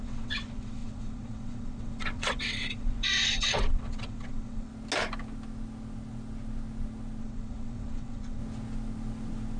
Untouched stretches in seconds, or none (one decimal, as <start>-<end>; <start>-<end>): 4.7-7.2; 8.4-9.6